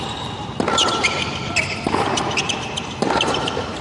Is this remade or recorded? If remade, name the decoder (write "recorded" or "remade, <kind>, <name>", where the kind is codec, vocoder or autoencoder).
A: recorded